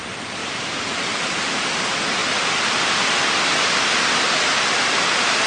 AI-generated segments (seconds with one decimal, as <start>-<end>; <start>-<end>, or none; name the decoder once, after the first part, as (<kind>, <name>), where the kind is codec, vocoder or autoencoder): 0.4-1.7 (vocoder, BigVGAN v2)